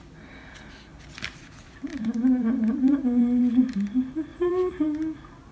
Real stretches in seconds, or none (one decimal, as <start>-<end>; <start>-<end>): 0.0-0.9; 3.4-4.3; 4.8-5.5